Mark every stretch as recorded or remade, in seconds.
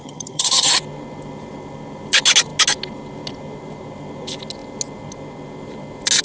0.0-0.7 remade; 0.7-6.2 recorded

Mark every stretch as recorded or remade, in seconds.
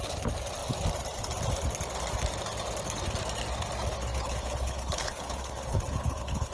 0.0-4.1 recorded; 4.1-6.5 remade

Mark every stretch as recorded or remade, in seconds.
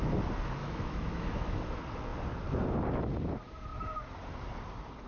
0.0-0.6 recorded; 0.6-1.6 remade; 1.6-5.1 recorded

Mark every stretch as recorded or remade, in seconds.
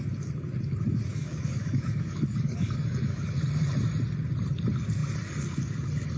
0.0-1.1 recorded; 1.1-3.3 remade; 3.3-6.2 recorded